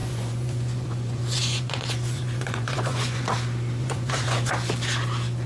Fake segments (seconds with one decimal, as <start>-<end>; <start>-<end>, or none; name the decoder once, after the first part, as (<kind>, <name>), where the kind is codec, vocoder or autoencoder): 0.0-3.2 (vocoder, Vocos); 3.8-4.5